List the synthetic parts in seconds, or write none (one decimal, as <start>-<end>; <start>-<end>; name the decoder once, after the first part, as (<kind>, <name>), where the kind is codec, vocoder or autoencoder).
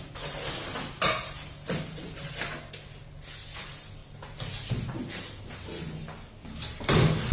none